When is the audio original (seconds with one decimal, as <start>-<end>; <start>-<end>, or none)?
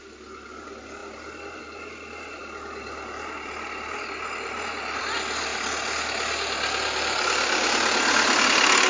0.0-1.0; 1.6-5.5; 8.4-8.9